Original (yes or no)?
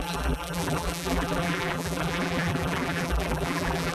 no